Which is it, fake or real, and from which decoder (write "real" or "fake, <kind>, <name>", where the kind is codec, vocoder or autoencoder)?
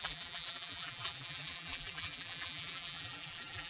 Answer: fake, vocoder, BigVGAN v2